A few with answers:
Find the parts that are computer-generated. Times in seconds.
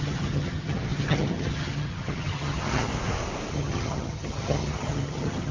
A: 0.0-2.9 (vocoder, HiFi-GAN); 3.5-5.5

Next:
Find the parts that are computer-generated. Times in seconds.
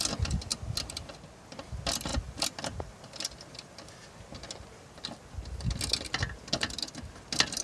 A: none